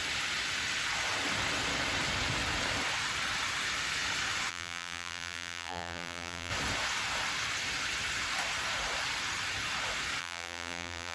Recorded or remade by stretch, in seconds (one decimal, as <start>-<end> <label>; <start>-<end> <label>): 0.0-4.5 recorded; 4.5-6.5 remade; 6.5-10.2 recorded; 10.2-11.1 remade